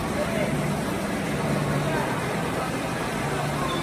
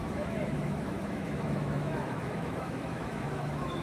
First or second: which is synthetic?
second